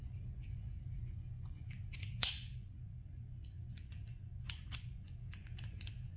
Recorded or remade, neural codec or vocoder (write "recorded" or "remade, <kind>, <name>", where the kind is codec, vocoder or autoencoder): remade, vocoder, Vocos